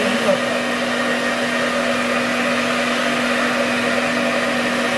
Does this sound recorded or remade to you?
recorded